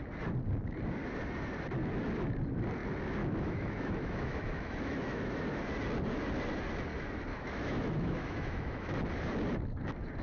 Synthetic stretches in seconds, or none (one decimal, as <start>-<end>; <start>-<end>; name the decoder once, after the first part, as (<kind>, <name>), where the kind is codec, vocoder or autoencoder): 3.2-5.4 (autoencoder, DAC-VAE); 7.3-9.0